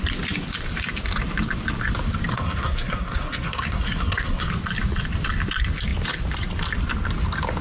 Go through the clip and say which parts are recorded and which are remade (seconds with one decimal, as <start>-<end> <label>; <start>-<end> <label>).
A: 0.0-2.3 recorded; 2.3-4.5 remade; 4.5-7.6 recorded